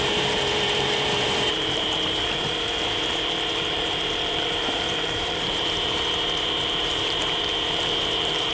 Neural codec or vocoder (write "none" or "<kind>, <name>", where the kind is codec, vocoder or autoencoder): vocoder, BigVGAN v2